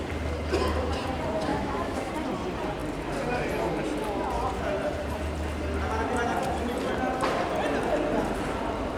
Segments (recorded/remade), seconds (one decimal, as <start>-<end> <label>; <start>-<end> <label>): 0.0-1.5 recorded; 1.5-2.1 remade; 2.1-9.0 recorded